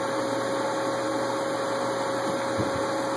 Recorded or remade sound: recorded